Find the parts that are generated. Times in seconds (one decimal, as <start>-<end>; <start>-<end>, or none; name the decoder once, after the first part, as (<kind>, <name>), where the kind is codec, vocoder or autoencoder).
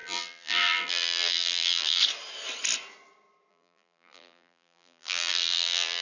0.0-2.0 (vocoder, BigVGAN v2); 3.5-6.0